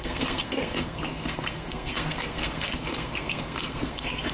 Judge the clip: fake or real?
fake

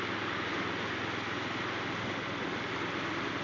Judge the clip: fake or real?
real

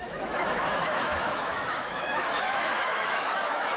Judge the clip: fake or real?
fake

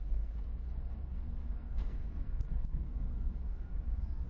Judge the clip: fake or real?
fake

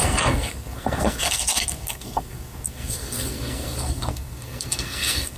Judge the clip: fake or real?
fake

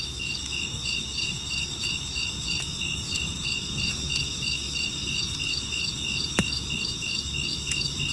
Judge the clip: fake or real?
fake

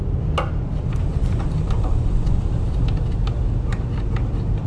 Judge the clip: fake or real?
real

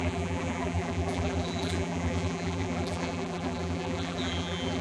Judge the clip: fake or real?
fake